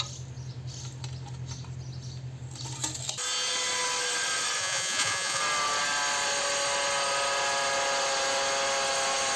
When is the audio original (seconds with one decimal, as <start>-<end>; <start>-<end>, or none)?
0.0-4.6; 5.4-9.4